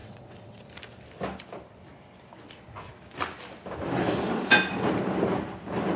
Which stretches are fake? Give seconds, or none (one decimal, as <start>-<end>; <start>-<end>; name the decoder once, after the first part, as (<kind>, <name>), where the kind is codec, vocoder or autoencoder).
0.0-0.6 (vocoder, WaveNeXt)